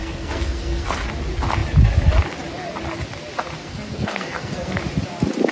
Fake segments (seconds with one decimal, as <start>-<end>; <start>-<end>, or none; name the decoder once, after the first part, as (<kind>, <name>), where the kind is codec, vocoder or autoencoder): 0.0-0.9 (codec, SNAC); 3.6-4.8